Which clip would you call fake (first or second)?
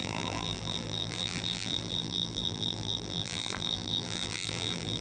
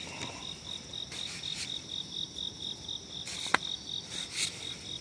first